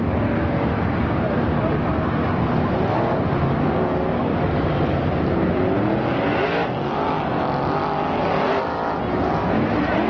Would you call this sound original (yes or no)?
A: yes